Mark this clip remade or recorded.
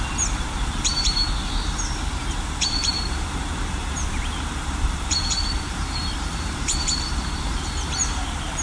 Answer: remade